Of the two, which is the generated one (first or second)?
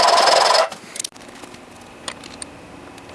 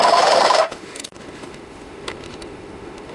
second